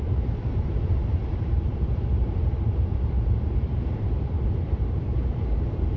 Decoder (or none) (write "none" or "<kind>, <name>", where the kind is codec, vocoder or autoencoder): vocoder, BigVGAN v2